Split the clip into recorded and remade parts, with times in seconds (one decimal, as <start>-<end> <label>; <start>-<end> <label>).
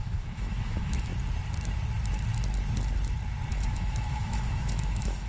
0.0-1.1 remade; 1.1-3.5 recorded; 3.5-5.3 remade